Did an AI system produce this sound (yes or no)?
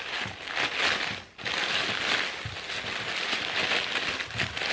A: no